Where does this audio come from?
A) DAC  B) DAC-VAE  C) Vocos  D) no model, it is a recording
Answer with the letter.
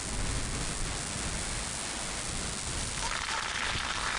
D